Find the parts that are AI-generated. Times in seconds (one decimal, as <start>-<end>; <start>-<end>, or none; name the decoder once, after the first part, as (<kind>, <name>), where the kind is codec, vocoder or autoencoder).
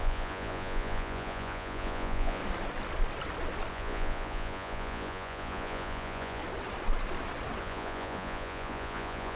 0.0-2.4 (vocoder, Vocos); 3.7-6.4; 7.6-9.4